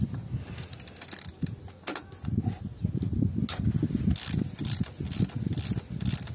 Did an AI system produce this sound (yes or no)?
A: no